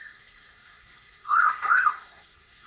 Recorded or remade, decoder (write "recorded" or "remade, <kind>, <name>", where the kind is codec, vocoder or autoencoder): remade, codec, SNAC